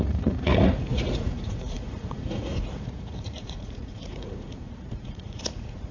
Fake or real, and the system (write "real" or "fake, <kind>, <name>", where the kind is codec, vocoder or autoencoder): fake, vocoder, Vocos